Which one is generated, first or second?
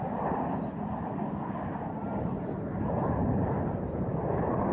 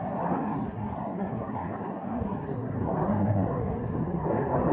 second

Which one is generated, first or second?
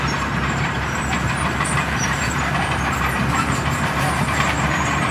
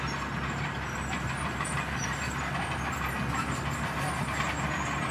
first